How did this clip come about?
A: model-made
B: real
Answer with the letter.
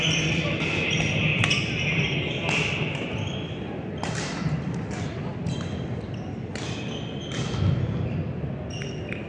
B